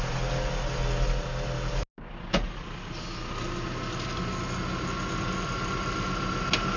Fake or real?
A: real